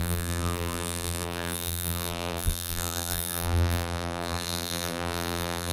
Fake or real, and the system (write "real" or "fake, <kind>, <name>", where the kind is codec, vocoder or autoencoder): fake, vocoder, BigVGAN v2